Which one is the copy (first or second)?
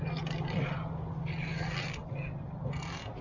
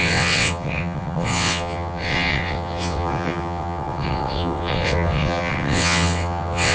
second